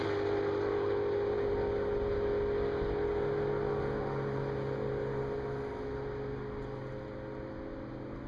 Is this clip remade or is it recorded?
recorded